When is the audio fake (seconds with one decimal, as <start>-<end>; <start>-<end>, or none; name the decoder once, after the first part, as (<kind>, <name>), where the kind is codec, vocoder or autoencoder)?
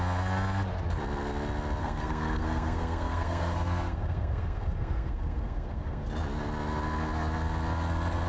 1.8-6.1 (codec, SNAC)